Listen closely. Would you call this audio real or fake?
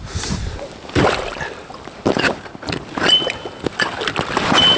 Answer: real